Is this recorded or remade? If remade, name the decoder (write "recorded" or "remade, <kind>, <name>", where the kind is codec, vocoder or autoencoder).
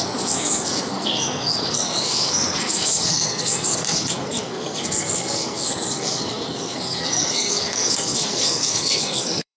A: remade, codec, SNAC